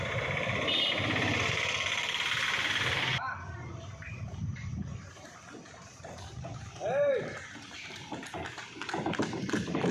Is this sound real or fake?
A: fake